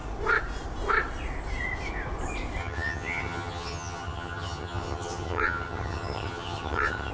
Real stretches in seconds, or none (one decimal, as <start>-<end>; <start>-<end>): 0.0-2.6